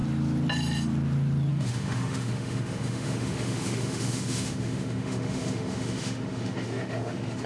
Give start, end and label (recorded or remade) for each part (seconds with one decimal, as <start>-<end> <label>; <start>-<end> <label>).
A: 0.0-1.5 recorded; 1.5-7.5 remade